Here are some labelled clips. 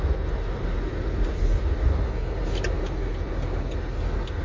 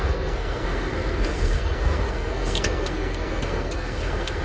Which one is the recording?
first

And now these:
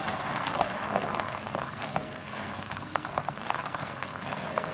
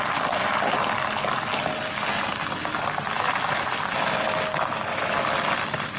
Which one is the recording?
second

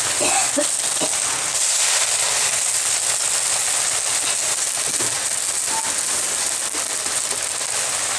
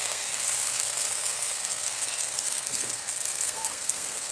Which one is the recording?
first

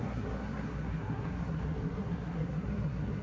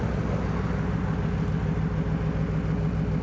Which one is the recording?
second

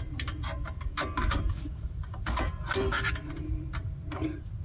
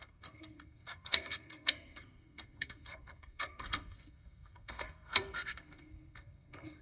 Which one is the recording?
first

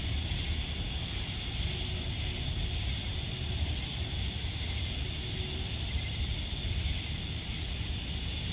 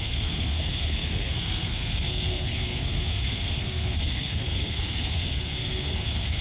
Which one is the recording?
first